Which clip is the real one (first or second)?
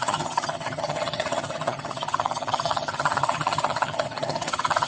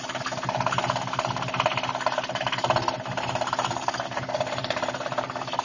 second